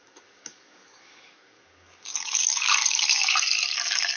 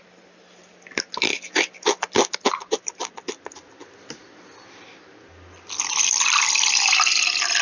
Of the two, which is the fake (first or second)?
first